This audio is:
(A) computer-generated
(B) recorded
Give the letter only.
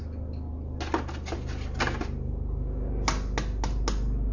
B